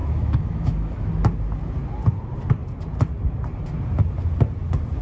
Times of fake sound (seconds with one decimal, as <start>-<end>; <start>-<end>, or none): 0.0-1.1